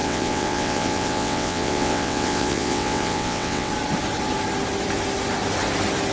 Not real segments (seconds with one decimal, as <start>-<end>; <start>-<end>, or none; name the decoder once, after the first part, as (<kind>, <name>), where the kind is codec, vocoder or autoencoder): 0.0-3.7 (vocoder, WaveNeXt)